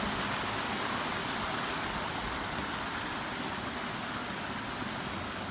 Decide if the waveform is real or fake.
real